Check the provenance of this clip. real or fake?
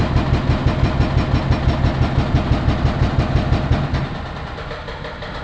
real